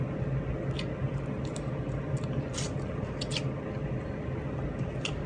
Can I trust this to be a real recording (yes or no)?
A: yes